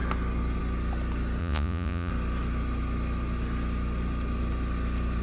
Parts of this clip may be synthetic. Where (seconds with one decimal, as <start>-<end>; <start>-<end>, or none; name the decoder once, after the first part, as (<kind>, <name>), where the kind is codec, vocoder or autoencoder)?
1.4-2.1 (vocoder, Vocos)

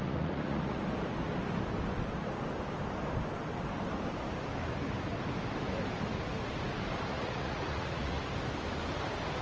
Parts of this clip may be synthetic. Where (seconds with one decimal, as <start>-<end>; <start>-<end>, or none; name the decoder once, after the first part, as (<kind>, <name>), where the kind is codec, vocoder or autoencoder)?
0.0-0.8 (vocoder, Vocos); 7.1-8.2

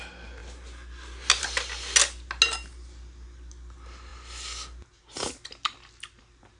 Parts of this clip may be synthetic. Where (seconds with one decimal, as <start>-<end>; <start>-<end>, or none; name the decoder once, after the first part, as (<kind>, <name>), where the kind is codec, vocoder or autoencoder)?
none